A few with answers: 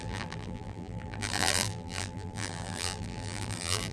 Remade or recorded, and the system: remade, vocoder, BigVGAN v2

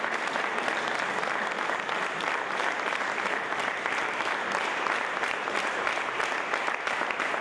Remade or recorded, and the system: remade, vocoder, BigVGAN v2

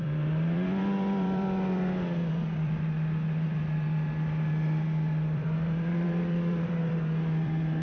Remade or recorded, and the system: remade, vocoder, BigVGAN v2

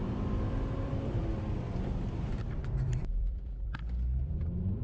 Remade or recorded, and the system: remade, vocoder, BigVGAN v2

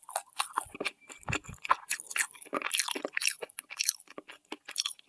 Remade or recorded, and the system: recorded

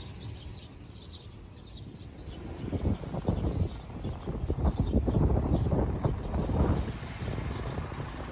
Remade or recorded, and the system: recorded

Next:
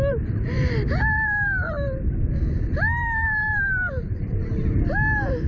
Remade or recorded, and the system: remade, vocoder, BigVGAN v2